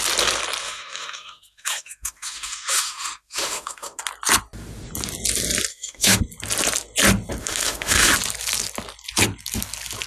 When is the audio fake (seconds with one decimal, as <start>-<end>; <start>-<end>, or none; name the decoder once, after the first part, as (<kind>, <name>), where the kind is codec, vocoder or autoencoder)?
0.6-4.0 (autoencoder, DAC-VAE); 5.7-6.2; 7.4-8.1